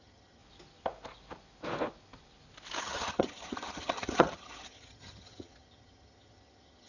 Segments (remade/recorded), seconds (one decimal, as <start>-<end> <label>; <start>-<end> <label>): 0.0-0.4 remade; 0.4-2.8 recorded; 2.8-6.9 remade

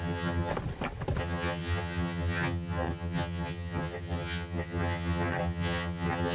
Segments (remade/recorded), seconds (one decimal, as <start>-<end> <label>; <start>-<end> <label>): 0.0-0.5 remade; 0.5-1.2 recorded; 1.2-6.3 remade